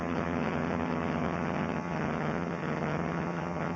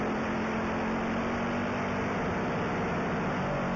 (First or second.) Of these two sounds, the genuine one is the second